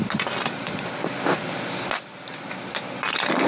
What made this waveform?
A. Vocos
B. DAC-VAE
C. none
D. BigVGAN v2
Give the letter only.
C